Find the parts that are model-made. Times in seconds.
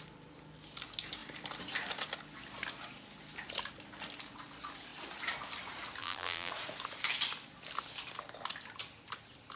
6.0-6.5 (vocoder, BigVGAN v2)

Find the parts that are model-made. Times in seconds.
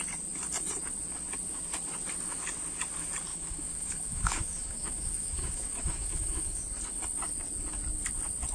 3.3-6.6 (autoencoder, DAC-VAE)